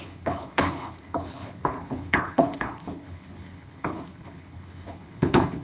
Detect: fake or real fake